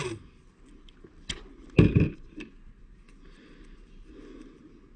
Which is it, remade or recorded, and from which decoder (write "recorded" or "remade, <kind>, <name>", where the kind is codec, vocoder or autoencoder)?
recorded